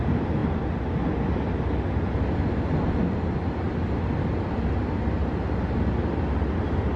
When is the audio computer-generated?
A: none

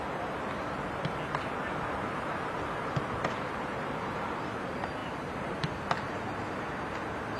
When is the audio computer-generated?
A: none